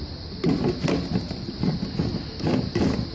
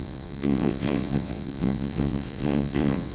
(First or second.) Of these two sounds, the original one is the first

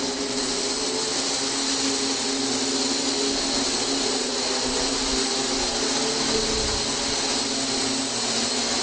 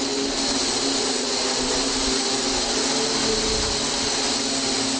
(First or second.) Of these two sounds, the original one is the first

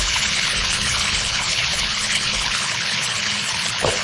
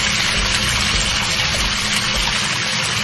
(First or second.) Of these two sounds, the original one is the second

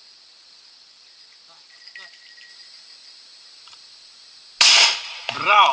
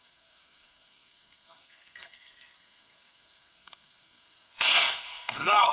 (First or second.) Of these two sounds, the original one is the first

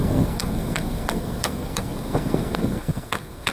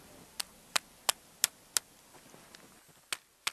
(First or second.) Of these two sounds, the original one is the second